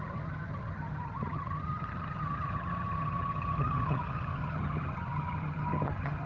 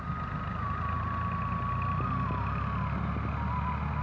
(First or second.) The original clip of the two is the second